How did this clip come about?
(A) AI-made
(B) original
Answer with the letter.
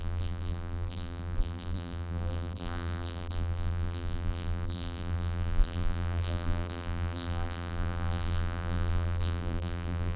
A